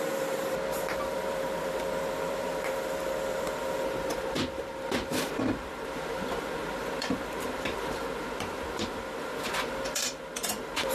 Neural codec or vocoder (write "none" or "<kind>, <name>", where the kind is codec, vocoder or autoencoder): vocoder, BigVGAN v2